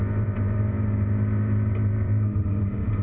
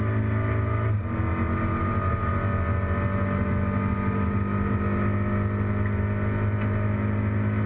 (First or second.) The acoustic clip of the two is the second